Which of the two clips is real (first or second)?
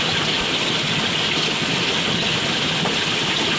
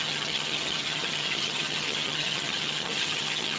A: first